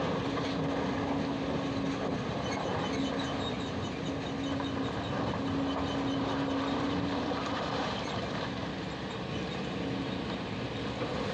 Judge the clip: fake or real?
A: real